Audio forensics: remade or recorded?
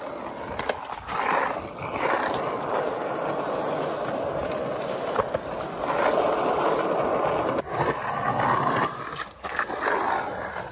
recorded